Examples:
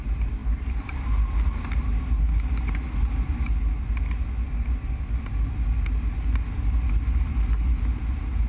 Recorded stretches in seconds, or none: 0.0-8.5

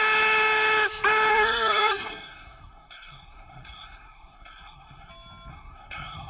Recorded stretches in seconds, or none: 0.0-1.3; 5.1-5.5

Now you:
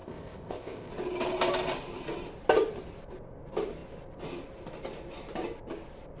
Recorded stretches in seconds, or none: 0.9-6.2

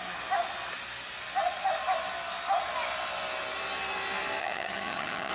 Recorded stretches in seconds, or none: 0.0-4.4